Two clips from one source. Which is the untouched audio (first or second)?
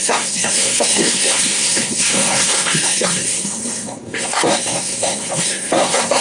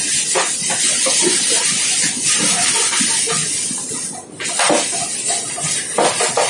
second